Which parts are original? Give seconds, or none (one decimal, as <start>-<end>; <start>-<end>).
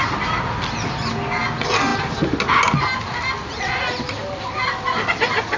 0.0-5.6